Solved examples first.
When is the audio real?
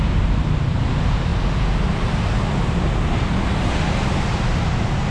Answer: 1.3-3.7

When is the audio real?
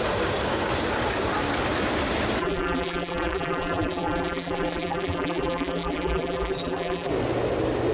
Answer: 0.0-2.4; 7.1-7.9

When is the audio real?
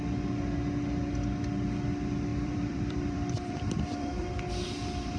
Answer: 0.0-2.3; 4.1-5.2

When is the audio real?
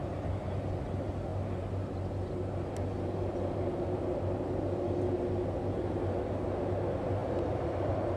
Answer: 0.0-7.2